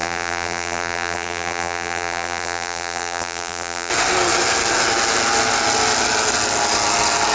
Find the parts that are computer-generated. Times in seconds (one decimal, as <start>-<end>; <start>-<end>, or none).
0.0-3.9